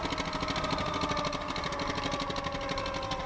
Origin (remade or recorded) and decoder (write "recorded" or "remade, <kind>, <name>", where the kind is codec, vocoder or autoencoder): recorded